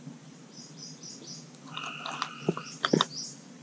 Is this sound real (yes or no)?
yes